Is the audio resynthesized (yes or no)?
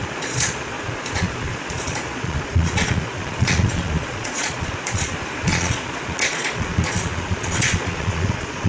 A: yes